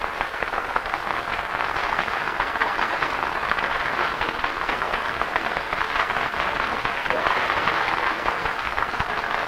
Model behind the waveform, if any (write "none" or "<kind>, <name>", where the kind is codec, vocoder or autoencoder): codec, SNAC